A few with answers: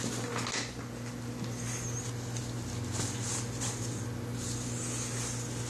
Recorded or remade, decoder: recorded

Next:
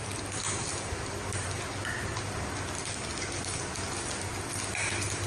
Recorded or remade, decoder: recorded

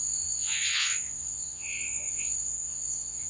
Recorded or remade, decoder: remade, vocoder, Vocos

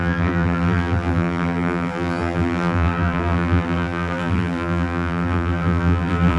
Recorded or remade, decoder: remade, vocoder, BigVGAN v2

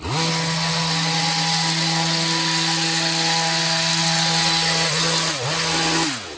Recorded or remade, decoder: recorded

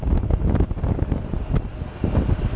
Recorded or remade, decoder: recorded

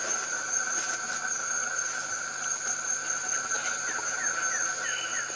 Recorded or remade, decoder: recorded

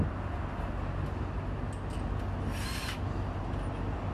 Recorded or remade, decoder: recorded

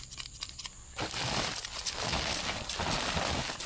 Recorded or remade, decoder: recorded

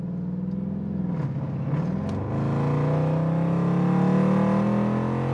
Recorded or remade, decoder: recorded